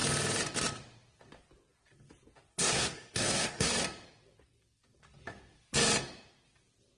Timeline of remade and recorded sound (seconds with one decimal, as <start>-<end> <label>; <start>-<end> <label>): 0.0-2.5 recorded; 2.5-3.7 remade; 3.7-7.0 recorded